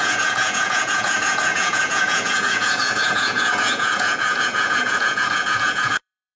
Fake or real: fake